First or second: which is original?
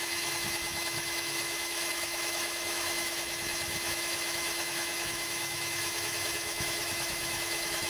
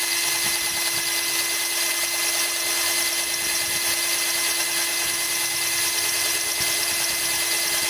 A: second